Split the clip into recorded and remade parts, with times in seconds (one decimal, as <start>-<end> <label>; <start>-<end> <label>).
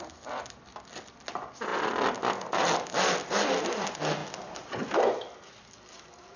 0.0-6.4 recorded